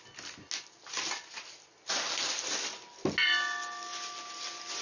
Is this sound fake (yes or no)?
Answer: no